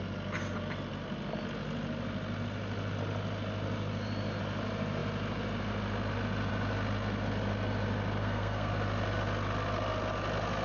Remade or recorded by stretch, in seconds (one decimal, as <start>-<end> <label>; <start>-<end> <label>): 0.0-8.2 recorded; 8.2-8.7 remade; 8.7-10.6 recorded